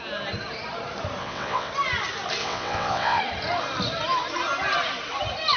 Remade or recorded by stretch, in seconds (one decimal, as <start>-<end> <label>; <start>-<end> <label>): 0.0-1.2 recorded; 1.2-1.7 remade; 1.7-2.4 recorded; 2.4-3.2 remade; 3.2-5.6 recorded

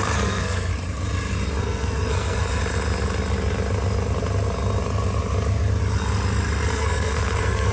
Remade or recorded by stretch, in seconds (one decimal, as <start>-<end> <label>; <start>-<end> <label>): 0.0-0.7 remade; 0.7-1.6 recorded; 1.6-2.6 remade; 2.6-6.7 recorded; 6.7-7.7 remade